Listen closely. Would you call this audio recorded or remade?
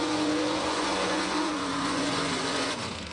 remade